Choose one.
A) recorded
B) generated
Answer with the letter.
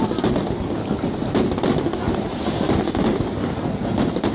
A